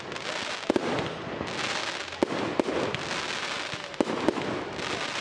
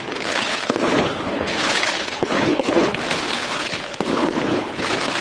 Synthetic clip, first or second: second